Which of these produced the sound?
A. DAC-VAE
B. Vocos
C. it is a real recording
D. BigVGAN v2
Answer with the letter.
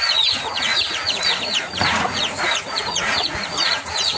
B